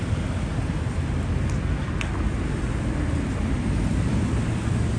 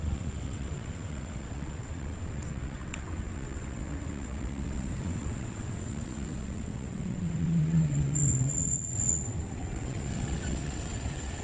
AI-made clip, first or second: second